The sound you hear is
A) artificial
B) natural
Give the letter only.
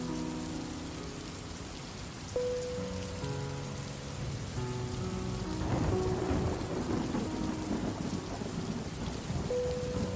B